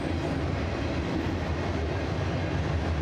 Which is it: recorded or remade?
recorded